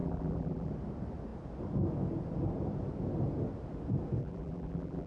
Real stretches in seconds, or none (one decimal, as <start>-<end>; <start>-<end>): 0.7-4.2